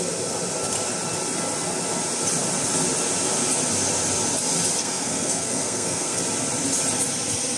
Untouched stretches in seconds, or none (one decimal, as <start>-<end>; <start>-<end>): 0.0-4.8; 6.2-7.6